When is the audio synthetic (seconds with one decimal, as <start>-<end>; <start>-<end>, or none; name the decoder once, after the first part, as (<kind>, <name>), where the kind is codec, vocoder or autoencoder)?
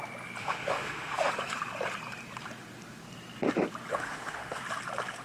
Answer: 0.4-1.3 (autoencoder, DAC-VAE); 3.9-4.6